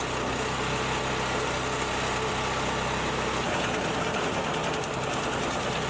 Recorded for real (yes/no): yes